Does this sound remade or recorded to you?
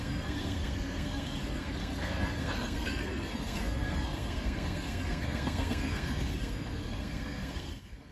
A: remade